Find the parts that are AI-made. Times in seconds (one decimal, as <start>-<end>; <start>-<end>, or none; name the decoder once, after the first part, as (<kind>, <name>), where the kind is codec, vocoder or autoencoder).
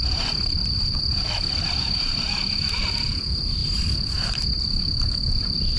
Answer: 0.6-1.4 (vocoder, BigVGAN v2); 3.6-4.4